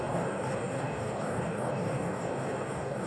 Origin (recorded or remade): remade